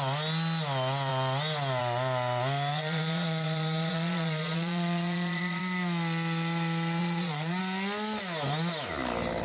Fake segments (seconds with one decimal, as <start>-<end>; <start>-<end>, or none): 2.7-5.6; 7.0-7.6